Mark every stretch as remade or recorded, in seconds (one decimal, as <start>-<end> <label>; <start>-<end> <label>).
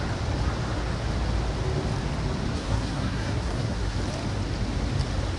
0.0-2.5 recorded; 2.5-4.0 remade; 4.0-5.4 recorded